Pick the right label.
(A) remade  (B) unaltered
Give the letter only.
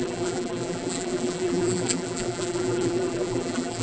A